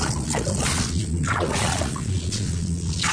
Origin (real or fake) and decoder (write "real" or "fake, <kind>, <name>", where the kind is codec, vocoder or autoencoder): fake, vocoder, Vocos